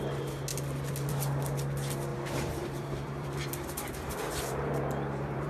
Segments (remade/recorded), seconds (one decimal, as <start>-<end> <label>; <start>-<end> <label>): 0.0-2.1 recorded; 2.1-5.5 remade